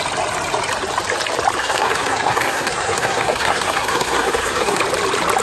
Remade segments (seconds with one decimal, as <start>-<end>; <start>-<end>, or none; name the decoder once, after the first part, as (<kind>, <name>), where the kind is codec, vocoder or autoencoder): 1.6-4.8 (codec, SNAC)